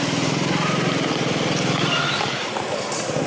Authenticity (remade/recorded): recorded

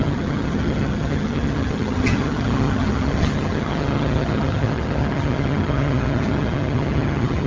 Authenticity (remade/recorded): remade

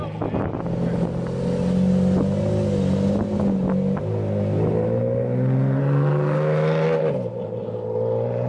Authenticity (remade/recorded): recorded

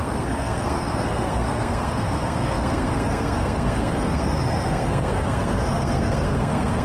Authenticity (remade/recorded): remade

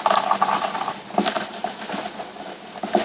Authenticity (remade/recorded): recorded